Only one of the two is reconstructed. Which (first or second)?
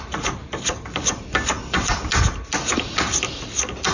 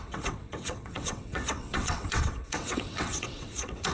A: second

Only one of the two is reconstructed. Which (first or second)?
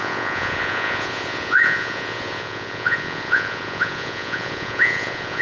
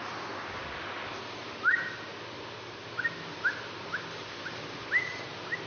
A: first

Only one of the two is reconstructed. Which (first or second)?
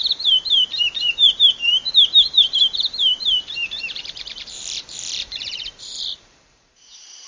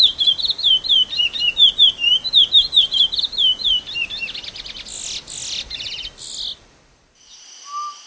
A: first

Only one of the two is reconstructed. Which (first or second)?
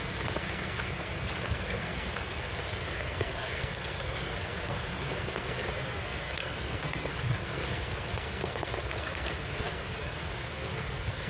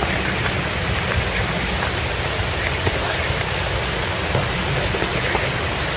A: first